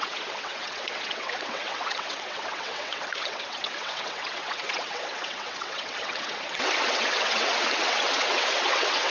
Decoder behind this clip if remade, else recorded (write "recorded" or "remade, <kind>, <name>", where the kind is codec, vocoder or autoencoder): remade, vocoder, WaveNeXt